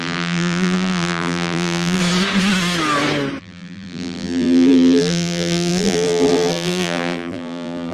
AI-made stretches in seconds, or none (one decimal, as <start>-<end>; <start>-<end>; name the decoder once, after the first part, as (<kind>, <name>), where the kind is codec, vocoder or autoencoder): 0.0-2.0 (vocoder, BigVGAN v2); 3.4-7.9